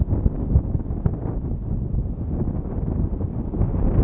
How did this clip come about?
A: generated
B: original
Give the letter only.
B